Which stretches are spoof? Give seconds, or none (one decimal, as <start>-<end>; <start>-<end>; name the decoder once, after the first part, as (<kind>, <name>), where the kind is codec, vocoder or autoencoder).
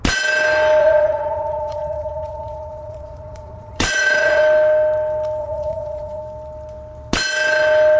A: 0.8-4.4 (vocoder, Vocos); 5.4-6.2